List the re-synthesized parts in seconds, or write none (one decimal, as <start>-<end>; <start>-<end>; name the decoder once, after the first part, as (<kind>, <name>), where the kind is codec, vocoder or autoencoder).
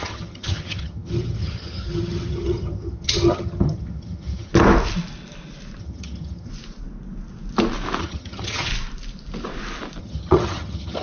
0.0-4.5 (vocoder, HiFi-GAN); 5.8-6.5; 8.0-8.7; 10.0-11.0